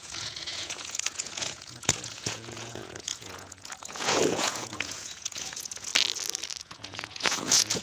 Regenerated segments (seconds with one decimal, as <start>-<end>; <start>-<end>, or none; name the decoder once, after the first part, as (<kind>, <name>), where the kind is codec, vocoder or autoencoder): 0.0-5.9 (vocoder, Vocos); 6.6-7.8